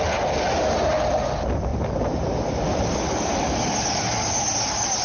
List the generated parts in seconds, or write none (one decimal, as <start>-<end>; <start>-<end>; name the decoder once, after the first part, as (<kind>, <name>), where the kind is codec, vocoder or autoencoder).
none

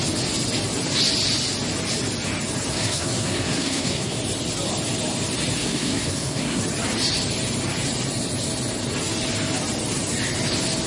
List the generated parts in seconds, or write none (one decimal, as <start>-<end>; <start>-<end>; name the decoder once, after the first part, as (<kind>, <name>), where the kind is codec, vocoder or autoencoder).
2.7-4.2 (codec, SNAC); 5.6-6.6

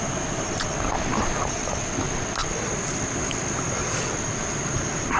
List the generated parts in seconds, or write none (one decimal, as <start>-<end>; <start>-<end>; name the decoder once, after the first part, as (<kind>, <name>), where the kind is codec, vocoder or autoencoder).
none

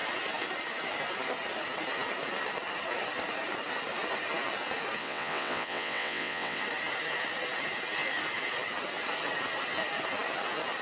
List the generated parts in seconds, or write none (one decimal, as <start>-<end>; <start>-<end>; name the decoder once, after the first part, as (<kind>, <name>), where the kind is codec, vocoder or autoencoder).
5.0-6.6 (vocoder, WaveNeXt)

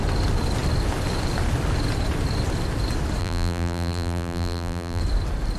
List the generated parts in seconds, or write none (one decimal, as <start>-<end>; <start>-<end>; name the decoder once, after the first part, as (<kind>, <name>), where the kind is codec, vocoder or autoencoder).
3.2-5.0 (vocoder, BigVGAN v2)

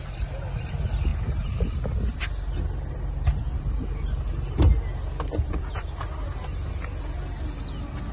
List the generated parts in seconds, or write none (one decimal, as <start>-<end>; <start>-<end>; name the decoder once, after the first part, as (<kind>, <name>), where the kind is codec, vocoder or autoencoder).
none

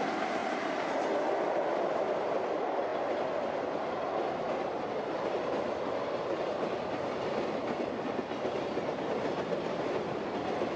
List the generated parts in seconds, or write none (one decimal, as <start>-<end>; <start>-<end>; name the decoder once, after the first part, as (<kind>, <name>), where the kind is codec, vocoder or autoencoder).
none

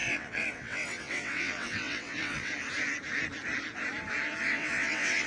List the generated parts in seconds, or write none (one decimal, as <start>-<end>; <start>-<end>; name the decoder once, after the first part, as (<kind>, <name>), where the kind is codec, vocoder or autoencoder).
0.0-2.5 (vocoder, WaveNeXt); 4.4-5.3